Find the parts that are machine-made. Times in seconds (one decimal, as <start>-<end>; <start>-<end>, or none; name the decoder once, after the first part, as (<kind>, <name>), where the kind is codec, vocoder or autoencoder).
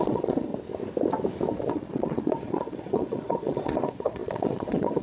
0.0-0.5 (vocoder, Vocos); 1.7-5.0